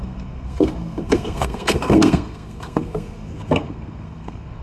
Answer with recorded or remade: remade